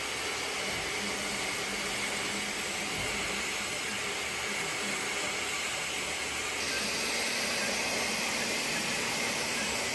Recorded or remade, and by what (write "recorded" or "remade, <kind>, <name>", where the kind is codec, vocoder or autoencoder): recorded